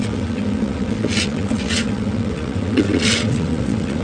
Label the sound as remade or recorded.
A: remade